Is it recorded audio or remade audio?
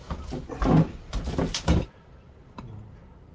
recorded